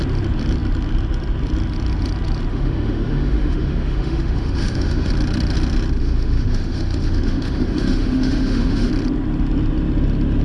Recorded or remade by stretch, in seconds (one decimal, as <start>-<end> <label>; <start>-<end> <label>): 0.0-2.5 recorded; 2.5-5.1 remade; 5.1-6.0 recorded; 6.0-8.9 remade; 8.9-10.4 recorded